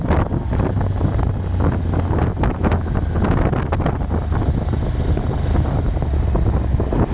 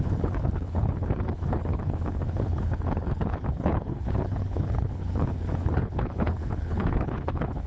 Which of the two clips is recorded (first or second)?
first